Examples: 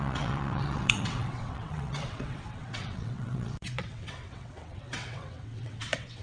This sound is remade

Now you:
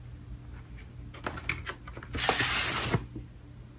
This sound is recorded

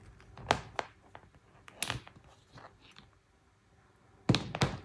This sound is recorded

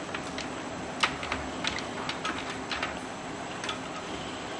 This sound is recorded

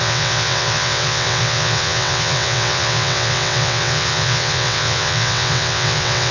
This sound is remade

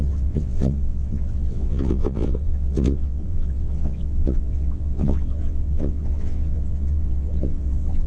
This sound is remade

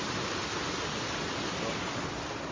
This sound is recorded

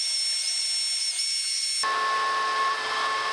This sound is recorded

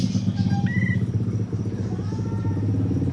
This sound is recorded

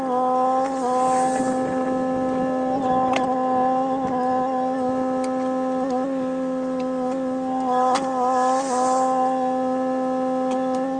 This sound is recorded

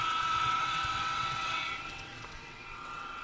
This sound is remade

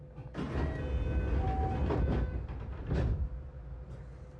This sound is recorded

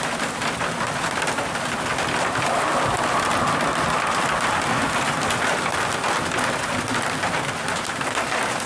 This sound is recorded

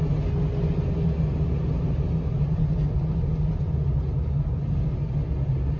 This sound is recorded